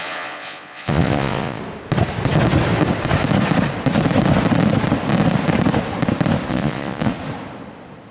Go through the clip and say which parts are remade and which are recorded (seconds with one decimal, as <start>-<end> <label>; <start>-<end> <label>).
0.0-1.6 remade; 1.6-6.5 recorded; 6.5-7.1 remade; 7.1-8.1 recorded